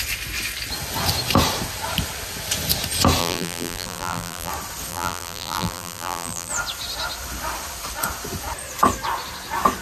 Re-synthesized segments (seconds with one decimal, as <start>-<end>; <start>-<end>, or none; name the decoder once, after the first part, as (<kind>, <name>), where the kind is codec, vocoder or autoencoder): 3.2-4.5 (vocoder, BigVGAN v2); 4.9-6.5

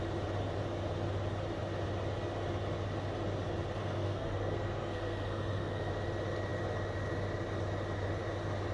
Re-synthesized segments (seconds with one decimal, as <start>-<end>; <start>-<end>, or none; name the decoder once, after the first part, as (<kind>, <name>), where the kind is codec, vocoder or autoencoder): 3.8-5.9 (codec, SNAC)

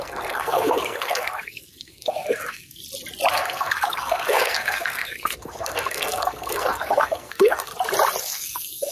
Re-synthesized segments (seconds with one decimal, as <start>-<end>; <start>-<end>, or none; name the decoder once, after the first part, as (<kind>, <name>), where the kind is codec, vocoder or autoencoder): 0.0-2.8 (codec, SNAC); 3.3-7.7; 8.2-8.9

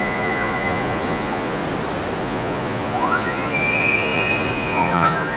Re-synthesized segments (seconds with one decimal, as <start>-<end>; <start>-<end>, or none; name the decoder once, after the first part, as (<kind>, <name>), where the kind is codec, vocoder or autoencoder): 0.0-1.6 (vocoder, Vocos); 2.2-5.4